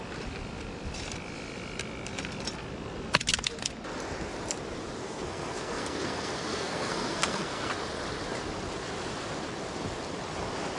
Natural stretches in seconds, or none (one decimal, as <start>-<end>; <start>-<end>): 0.0-5.0; 7.7-10.8